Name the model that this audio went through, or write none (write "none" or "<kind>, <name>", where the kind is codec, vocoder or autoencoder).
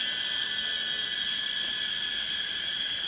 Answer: none